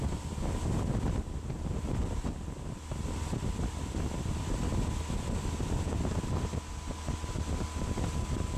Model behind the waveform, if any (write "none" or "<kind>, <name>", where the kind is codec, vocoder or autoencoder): none